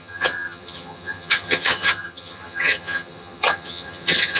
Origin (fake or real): fake